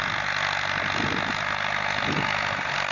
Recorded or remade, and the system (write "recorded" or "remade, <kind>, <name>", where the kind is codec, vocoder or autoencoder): recorded